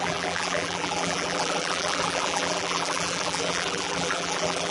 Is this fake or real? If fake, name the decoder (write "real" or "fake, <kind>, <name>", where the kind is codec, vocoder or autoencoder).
fake, vocoder, BigVGAN v2